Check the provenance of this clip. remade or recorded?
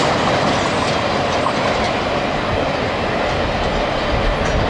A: recorded